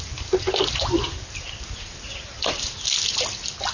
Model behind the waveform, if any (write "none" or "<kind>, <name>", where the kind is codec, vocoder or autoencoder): none